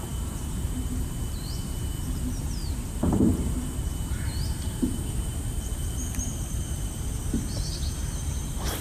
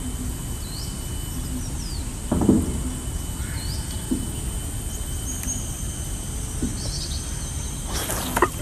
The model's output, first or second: first